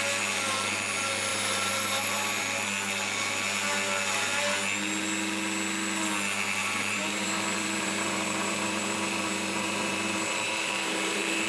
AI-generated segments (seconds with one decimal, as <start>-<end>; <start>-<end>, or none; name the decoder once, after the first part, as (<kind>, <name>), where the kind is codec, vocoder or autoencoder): 1.3-2.4 (vocoder, BigVGAN v2); 6.6-11.5